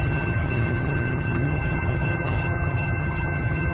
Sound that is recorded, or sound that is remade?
remade